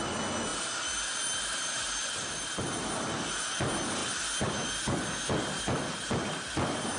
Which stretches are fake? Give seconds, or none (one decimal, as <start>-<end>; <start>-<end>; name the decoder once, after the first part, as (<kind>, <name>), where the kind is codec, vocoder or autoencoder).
0.5-3.5 (vocoder, BigVGAN v2)